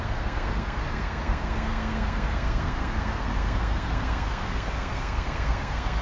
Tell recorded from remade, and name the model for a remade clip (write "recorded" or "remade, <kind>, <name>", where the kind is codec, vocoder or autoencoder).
remade, codec, SNAC